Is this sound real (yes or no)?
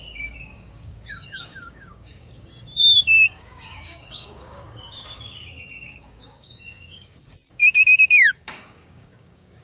no